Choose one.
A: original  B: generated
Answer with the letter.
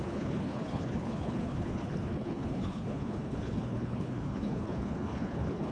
B